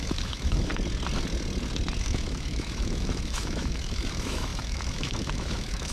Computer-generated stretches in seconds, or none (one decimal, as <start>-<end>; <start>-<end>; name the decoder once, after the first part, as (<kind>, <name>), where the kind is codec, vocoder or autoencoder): 0.0-0.7 (autoencoder, DAC-VAE); 2.0-5.9